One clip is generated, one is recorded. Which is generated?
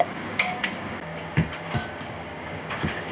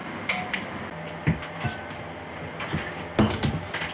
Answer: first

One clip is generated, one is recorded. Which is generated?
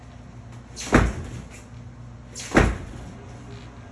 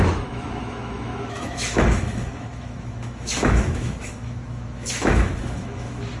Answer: second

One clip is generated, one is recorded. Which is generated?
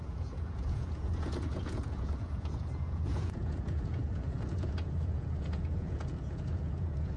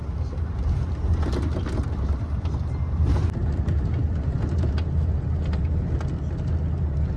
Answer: first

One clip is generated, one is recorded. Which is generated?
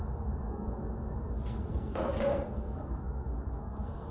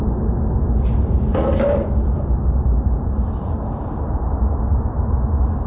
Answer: first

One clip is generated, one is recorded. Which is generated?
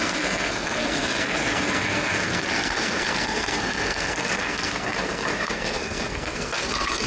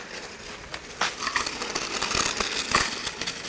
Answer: first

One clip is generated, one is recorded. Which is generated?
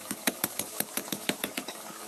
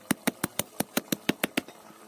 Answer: first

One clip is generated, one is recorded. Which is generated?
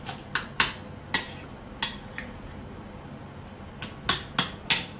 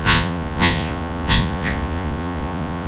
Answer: second